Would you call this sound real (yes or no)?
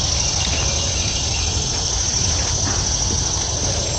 yes